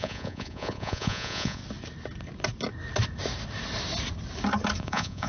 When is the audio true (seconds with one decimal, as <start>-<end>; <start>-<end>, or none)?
1.6-4.8